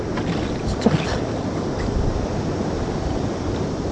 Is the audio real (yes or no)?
yes